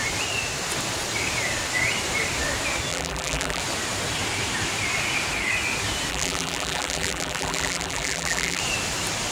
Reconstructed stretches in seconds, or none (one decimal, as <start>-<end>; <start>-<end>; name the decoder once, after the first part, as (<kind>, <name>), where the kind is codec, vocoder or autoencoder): 2.9-3.6 (vocoder, BigVGAN v2); 6.1-8.6